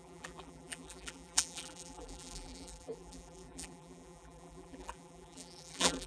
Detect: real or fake fake